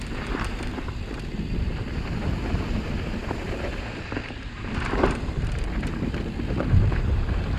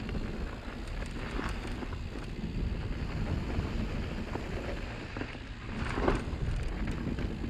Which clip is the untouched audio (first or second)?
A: second